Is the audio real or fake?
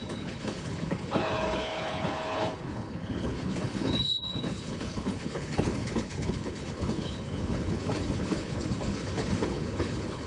fake